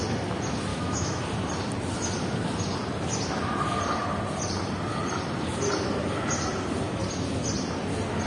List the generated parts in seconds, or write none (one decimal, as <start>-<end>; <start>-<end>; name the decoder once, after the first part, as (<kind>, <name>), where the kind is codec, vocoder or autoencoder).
0.7-1.2 (autoencoder, DAC-VAE)